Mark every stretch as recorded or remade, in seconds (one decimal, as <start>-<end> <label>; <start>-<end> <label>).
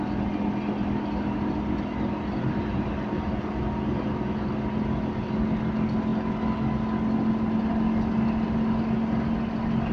0.0-9.9 recorded